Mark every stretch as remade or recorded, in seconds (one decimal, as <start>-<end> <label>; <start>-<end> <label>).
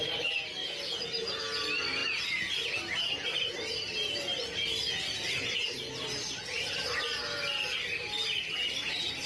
0.0-0.6 recorded; 0.6-1.4 remade; 1.4-9.3 recorded